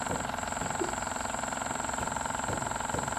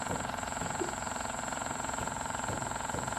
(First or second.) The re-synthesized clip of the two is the second